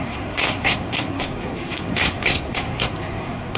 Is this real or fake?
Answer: fake